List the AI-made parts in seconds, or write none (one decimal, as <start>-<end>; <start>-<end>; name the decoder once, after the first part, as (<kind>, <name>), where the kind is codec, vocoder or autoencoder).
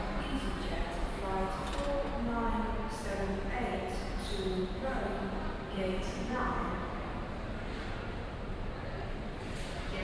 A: none